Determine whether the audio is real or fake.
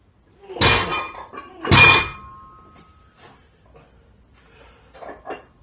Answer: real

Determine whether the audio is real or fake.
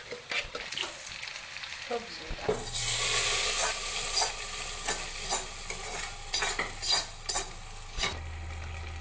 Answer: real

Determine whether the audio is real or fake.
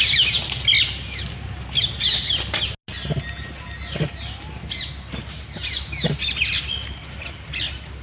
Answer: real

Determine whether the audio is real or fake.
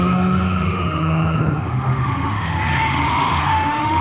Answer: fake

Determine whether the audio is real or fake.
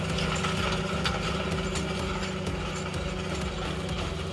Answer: real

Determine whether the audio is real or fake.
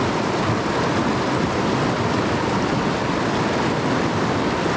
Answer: real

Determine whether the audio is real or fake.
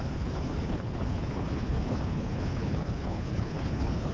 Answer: fake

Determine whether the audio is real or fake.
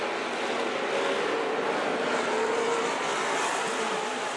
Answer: fake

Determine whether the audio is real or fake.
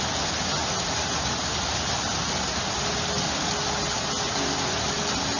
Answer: real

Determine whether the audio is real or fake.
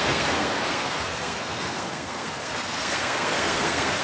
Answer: fake